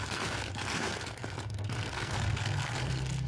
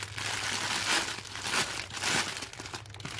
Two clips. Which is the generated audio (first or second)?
first